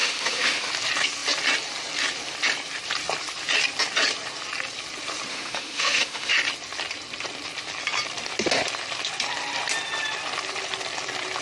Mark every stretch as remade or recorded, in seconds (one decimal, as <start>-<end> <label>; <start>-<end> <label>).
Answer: 0.0-0.7 remade; 0.7-5.3 recorded; 5.3-6.3 remade; 6.3-11.4 recorded